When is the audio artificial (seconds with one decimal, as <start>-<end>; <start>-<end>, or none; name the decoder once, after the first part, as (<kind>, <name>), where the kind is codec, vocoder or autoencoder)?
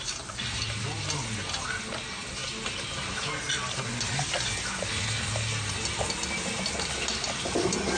none